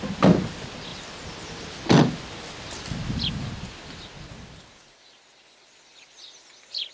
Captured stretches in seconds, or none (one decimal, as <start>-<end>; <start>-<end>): 0.0-6.9